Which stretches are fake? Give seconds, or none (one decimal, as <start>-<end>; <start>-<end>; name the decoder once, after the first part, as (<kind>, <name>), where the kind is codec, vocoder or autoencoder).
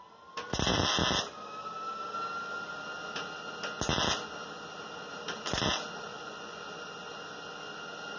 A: 6.1-6.6 (vocoder, Vocos)